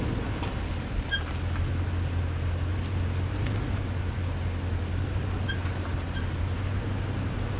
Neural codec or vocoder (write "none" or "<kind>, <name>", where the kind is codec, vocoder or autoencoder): none